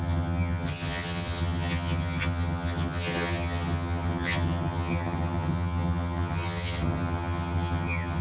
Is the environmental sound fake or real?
fake